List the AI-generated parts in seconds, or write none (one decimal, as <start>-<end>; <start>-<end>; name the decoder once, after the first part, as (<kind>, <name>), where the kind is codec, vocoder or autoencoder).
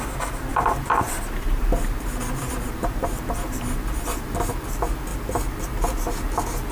0.5-4.5 (vocoder, BigVGAN v2)